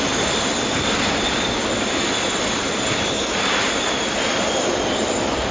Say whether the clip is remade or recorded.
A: recorded